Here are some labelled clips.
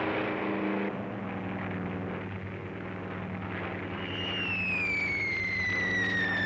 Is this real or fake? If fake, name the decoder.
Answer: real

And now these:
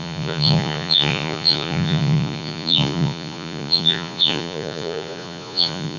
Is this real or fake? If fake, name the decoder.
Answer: fake, vocoder, Vocos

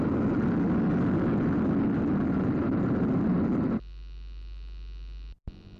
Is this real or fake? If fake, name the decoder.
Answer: real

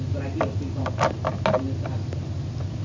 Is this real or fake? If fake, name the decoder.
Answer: real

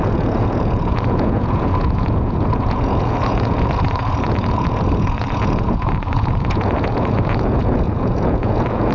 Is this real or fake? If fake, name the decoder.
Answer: fake, vocoder, Vocos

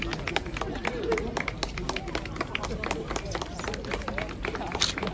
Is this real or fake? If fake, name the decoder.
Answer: real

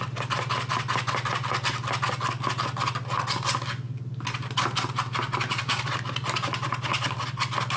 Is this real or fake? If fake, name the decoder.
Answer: real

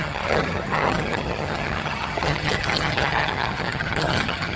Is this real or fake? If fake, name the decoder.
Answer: fake, vocoder, HiFi-GAN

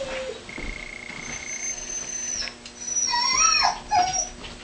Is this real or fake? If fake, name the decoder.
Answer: real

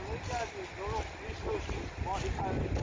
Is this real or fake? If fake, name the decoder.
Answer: real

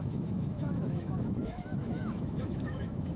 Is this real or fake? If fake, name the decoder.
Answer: fake, autoencoder, DAC-VAE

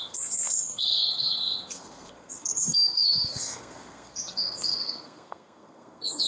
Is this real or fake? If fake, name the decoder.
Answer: fake, codec, SNAC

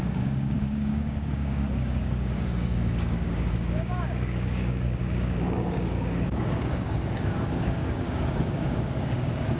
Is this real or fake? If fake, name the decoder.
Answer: fake, codec, DAC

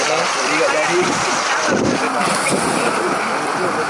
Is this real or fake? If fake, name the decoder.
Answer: real